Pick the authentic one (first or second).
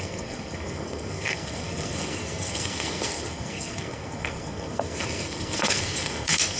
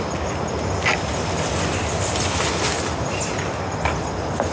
second